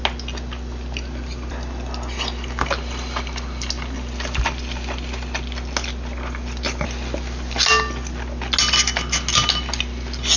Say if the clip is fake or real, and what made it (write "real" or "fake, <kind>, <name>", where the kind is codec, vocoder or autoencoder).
real